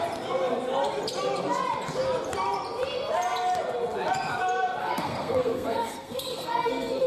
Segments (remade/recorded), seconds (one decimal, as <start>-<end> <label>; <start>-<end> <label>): 0.0-4.8 recorded; 4.8-7.1 remade